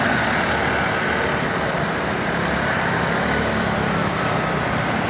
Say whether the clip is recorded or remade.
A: recorded